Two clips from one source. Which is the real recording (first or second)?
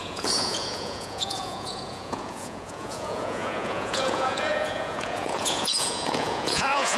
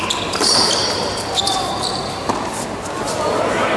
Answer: second